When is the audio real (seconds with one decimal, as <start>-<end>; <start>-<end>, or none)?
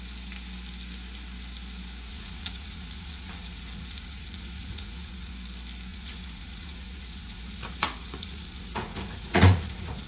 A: 0.0-2.1; 5.3-5.9